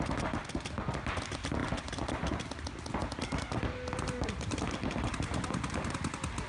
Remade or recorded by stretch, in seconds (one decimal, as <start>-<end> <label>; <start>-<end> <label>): 0.0-1.6 recorded; 1.6-2.4 remade; 2.4-3.0 recorded; 3.0-6.1 remade; 6.1-6.5 recorded